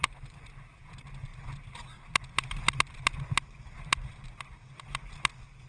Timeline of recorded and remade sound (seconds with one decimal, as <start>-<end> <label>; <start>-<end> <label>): 0.0-5.7 recorded